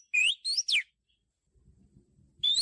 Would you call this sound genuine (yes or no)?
yes